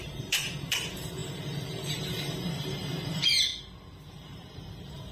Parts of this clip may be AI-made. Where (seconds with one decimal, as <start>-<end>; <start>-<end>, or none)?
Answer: 0.0-3.5; 4.1-5.1

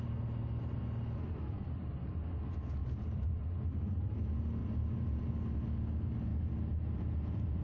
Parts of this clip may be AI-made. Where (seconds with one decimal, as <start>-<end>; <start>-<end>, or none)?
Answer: 2.8-3.5; 4.6-5.3

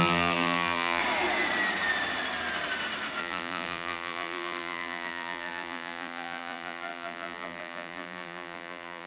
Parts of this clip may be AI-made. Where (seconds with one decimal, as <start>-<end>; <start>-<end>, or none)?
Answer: 0.0-1.0; 3.2-9.1